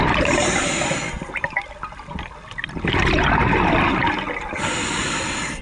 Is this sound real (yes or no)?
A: yes